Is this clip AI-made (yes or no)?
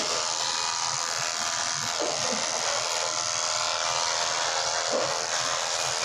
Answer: no